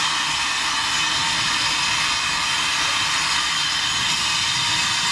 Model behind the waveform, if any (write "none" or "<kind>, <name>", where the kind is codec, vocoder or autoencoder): none